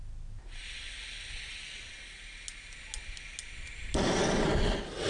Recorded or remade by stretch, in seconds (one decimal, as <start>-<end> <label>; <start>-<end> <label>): 0.0-5.1 recorded